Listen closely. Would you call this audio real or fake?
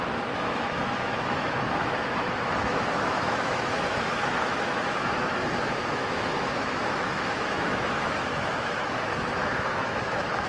fake